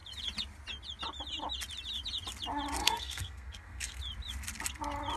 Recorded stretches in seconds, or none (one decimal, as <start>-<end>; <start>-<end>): 0.0-2.8; 4.0-5.2